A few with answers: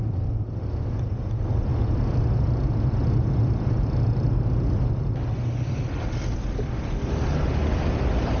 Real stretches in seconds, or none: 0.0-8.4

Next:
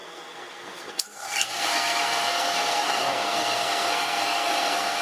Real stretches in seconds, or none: none

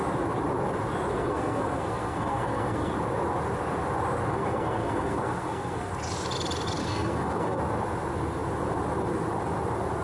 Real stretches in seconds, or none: 0.0-1.1; 2.9-4.3; 5.9-6.8; 7.6-10.0

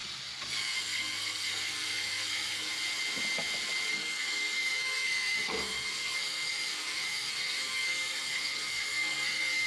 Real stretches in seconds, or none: 0.0-0.8; 2.7-3.9

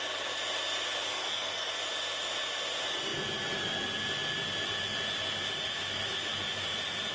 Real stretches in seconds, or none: 0.0-1.1; 1.7-7.1

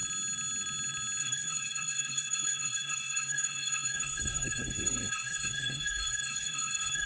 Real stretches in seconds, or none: 0.0-1.2

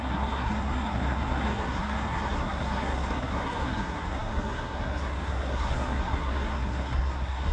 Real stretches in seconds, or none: none